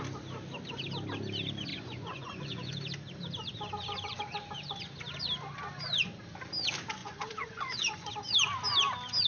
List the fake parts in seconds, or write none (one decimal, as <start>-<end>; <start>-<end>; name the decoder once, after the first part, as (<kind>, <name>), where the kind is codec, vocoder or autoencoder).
1.7-2.7 (vocoder, Vocos); 7.0-8.1